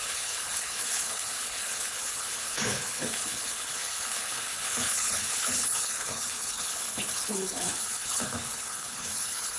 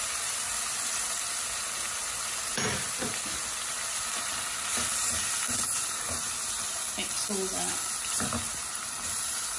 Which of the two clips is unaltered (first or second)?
second